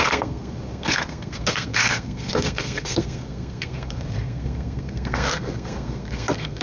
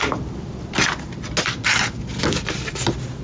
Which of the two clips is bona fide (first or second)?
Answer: second